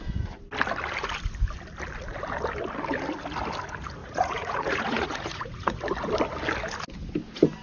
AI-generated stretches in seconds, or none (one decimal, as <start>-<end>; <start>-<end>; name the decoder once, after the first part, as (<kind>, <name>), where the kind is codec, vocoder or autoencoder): 4.0-5.8 (vocoder, Vocos)